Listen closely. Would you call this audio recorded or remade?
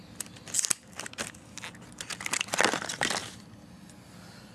recorded